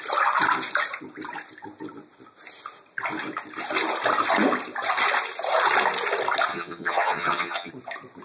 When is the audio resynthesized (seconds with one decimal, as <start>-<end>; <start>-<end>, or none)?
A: 6.5-7.7